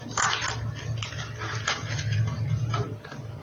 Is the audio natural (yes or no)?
yes